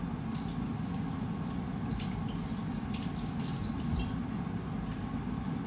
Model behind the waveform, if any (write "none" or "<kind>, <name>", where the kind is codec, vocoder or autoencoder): none